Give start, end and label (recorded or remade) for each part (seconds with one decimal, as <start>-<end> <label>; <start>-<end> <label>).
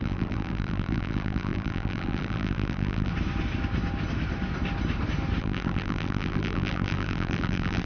0.0-3.1 remade; 3.1-5.4 recorded; 5.4-7.8 remade